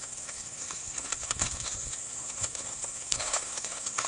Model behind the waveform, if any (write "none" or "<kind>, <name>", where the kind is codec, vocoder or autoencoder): codec, SNAC